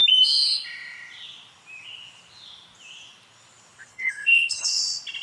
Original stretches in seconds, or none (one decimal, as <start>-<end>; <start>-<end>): 0.0-3.9; 4.8-5.2